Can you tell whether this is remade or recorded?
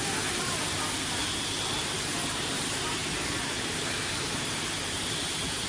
remade